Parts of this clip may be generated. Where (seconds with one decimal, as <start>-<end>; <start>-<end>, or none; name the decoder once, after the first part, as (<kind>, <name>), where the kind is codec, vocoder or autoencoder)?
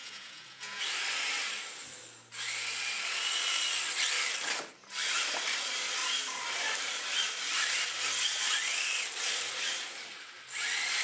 0.0-0.8 (vocoder, Vocos)